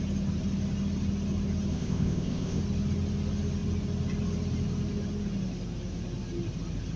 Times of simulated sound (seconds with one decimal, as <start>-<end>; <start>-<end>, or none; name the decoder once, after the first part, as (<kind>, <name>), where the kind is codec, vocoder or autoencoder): 1.7-2.6 (codec, ZipCodec)